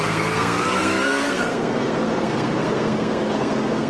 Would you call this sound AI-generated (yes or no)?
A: yes